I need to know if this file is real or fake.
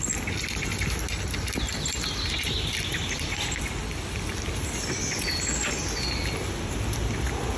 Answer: real